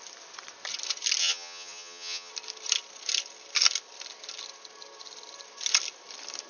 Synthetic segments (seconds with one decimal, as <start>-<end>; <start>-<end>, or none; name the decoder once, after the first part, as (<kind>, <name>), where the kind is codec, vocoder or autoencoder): 1.2-2.3 (vocoder, HiFi-GAN)